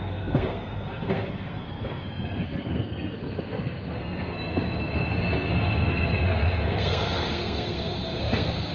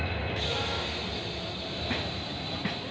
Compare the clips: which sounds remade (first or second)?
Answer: first